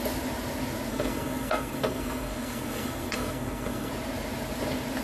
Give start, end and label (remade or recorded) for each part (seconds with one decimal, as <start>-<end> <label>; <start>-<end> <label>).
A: 0.0-0.9 recorded; 0.9-3.9 remade; 3.9-5.0 recorded